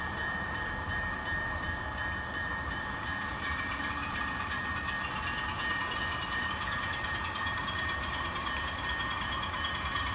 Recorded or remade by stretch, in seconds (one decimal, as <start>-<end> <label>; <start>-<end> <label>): 0.0-4.6 remade; 4.6-5.4 recorded; 5.4-10.1 remade